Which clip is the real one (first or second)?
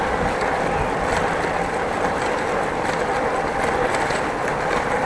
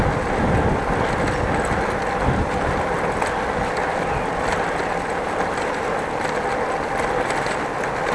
second